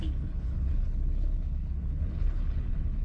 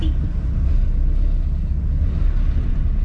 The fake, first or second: first